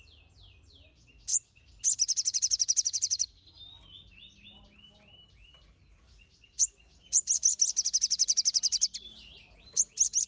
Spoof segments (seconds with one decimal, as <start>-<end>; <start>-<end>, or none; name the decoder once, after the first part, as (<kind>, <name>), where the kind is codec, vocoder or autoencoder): none